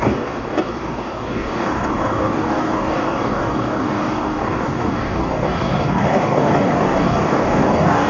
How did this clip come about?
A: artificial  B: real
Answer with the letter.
A